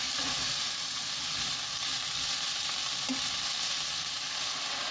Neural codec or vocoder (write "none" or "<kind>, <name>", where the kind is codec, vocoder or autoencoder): none